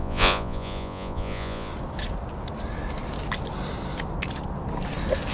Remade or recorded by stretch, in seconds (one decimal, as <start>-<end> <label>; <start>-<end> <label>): 0.0-1.7 remade; 1.7-5.3 recorded